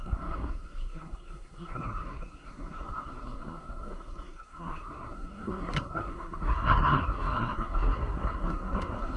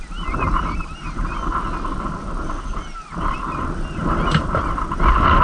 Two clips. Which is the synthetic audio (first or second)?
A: first